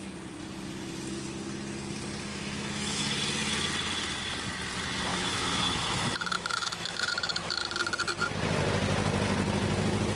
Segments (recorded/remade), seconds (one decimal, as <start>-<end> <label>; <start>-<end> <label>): 0.0-2.3 recorded; 2.3-3.0 remade; 3.0-5.1 recorded; 5.1-7.7 remade; 7.7-10.2 recorded